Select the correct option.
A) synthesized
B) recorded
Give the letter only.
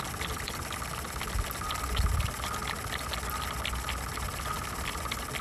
B